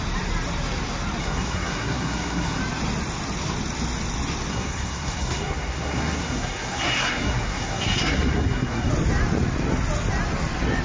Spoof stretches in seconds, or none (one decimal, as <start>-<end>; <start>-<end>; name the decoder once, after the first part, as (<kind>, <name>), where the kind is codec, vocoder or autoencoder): 1.2-2.6 (codec, SNAC); 4.5-8.9